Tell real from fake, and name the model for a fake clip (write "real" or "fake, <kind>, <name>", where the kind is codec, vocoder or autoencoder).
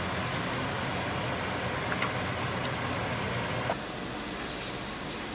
real